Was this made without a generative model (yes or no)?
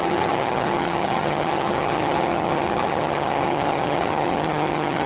no